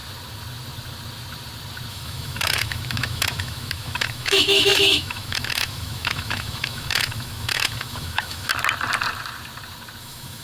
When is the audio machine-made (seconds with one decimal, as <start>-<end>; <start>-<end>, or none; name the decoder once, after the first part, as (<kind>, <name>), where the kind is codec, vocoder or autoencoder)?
1.9-8.5 (autoencoder, DAC-VAE); 10.0-10.4